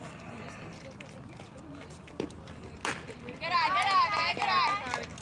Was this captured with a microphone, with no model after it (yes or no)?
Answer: yes